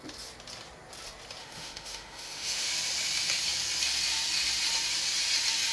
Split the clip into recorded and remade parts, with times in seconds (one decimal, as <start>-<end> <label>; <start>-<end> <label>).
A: 0.0-1.4 recorded; 1.4-2.7 remade; 2.7-5.7 recorded